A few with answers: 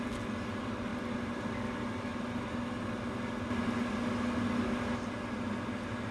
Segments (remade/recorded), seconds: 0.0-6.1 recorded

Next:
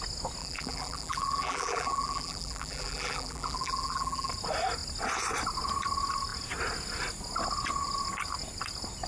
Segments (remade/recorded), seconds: 0.0-0.4 recorded; 0.4-4.3 remade; 4.3-9.1 recorded

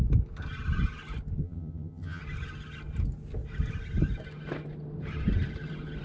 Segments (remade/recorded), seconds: 0.0-1.4 recorded; 1.4-2.2 remade; 2.2-6.0 recorded

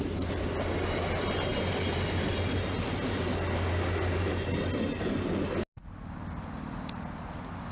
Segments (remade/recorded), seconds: 0.0-7.7 recorded

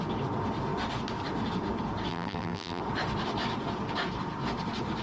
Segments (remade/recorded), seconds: 0.0-2.1 recorded; 2.1-2.8 remade; 2.8-5.0 recorded

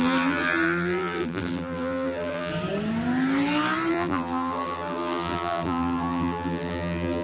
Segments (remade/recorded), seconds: 0.0-2.5 remade; 2.5-3.9 recorded; 3.9-7.2 remade